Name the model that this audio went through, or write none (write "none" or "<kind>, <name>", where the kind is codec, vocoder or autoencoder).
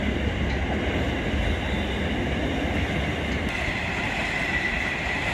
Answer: none